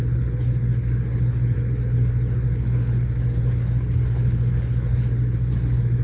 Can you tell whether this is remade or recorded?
remade